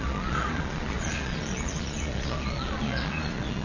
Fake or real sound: fake